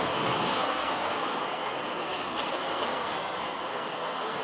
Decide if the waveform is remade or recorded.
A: remade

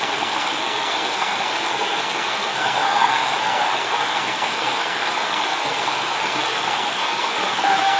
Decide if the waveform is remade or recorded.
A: remade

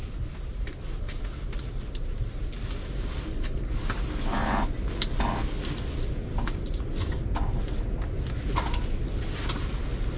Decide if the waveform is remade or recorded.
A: recorded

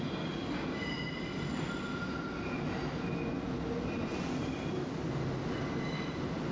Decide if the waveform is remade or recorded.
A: recorded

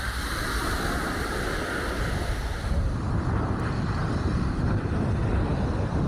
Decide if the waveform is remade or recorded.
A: recorded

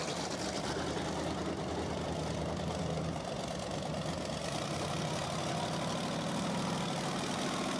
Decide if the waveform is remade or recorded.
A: recorded